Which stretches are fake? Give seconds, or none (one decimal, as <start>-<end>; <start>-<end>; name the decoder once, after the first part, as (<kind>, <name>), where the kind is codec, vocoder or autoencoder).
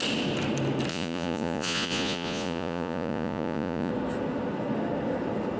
0.9-3.9 (vocoder, Vocos)